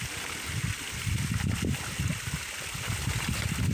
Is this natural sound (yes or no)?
yes